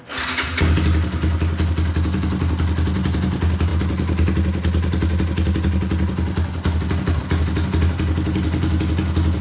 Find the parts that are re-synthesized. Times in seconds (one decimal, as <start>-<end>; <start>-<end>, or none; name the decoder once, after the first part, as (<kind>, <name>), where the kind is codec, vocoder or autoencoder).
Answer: none